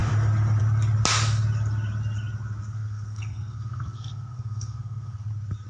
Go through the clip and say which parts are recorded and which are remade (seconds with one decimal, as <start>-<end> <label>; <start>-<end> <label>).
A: 0.0-2.7 recorded; 2.7-5.3 remade; 5.3-5.7 recorded